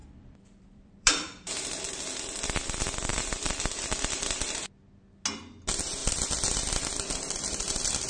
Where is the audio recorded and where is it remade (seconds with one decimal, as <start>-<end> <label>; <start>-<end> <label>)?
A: 0.0-1.8 remade; 1.8-3.1 recorded; 3.1-4.5 remade; 4.5-6.0 recorded; 6.0-7.1 remade; 7.1-8.1 recorded